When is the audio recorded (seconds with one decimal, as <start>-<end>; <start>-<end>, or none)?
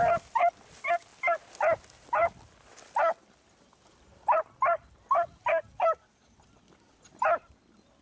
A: 0.0-8.0